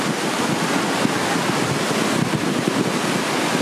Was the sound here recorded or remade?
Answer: recorded